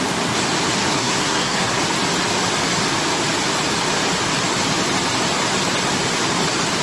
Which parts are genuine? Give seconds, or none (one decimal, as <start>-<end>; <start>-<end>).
0.0-0.9; 1.8-6.8